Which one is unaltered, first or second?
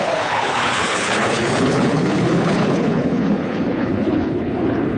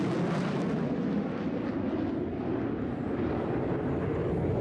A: second